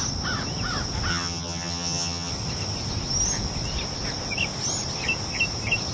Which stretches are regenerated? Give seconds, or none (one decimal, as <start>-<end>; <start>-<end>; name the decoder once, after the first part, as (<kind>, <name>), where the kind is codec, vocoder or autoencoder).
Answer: 1.1-2.3 (vocoder, HiFi-GAN)